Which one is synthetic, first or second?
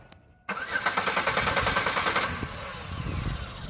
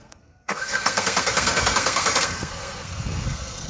second